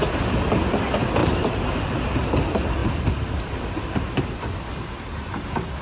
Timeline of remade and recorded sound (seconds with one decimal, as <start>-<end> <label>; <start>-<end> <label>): 0.0-1.2 recorded; 1.2-1.8 remade; 1.8-2.8 recorded; 2.8-3.5 remade; 3.5-5.8 recorded